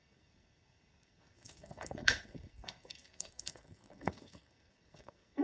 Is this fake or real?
fake